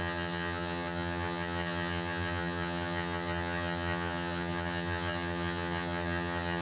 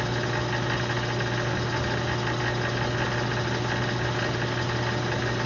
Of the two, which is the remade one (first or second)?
first